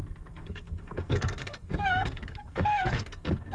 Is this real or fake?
fake